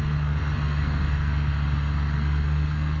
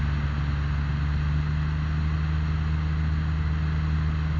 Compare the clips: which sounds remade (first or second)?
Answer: first